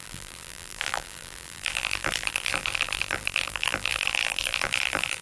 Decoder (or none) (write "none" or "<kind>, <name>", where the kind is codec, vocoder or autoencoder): vocoder, BigVGAN v2